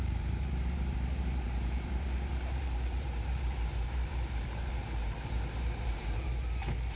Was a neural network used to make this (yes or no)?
yes